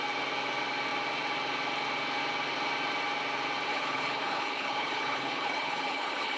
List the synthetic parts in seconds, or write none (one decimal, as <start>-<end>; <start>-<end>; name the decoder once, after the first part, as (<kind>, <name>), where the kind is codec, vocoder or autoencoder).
3.7-6.4 (codec, HILCodec)